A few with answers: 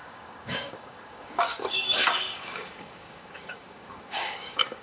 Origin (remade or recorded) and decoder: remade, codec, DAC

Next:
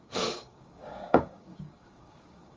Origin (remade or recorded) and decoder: remade, codec, DAC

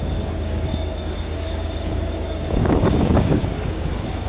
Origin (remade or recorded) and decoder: remade, codec, DAC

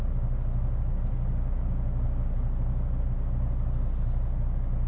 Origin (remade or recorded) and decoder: recorded